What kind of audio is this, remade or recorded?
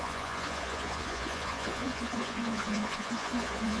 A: remade